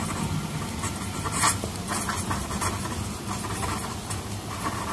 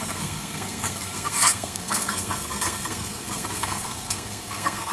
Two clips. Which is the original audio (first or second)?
first